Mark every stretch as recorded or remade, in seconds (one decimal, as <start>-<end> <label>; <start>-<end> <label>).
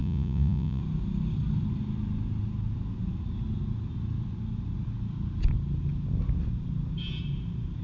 0.0-0.8 remade; 0.8-7.8 recorded